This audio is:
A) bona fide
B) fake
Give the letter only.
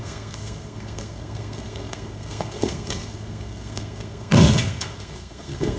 B